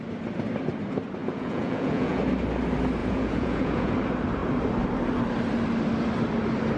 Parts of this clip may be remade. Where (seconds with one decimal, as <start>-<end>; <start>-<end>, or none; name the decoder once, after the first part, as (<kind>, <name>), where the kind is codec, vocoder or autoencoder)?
1.2-2.2 (vocoder, Vocos); 3.0-3.9